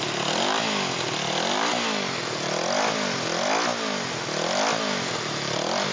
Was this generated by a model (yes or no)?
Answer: no